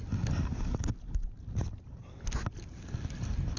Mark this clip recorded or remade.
recorded